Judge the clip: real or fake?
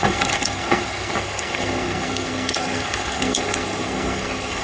fake